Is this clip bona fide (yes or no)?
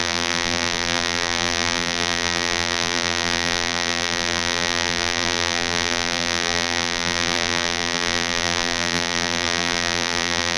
no